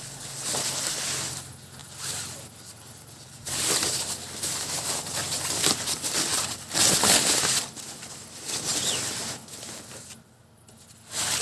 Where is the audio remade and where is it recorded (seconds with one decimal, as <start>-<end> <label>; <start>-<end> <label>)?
0.0-11.4 recorded